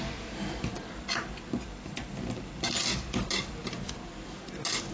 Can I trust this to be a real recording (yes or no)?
yes